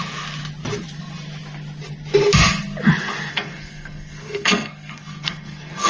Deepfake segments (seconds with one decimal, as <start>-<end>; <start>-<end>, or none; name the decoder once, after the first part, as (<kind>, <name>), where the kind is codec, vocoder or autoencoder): 3.3-5.9 (codec, SNAC)